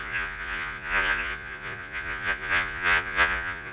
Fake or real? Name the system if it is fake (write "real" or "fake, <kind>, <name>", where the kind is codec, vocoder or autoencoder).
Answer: fake, vocoder, Vocos